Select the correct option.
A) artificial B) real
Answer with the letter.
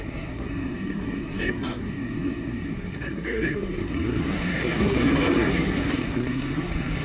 A